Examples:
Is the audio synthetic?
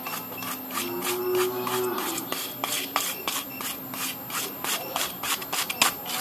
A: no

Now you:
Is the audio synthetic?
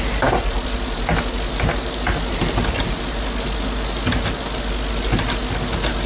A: no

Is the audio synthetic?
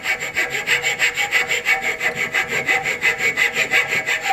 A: no